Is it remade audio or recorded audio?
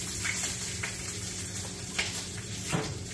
remade